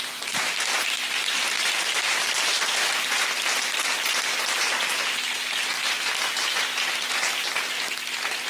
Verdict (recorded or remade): recorded